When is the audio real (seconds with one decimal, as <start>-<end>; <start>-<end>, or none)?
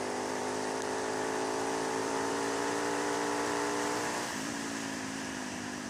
none